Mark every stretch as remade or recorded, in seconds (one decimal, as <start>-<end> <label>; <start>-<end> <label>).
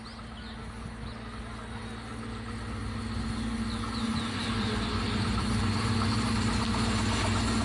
0.0-7.6 recorded